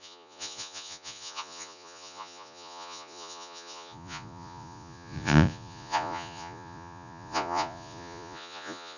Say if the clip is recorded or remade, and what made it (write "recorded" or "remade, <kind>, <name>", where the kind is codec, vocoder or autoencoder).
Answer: remade, vocoder, Vocos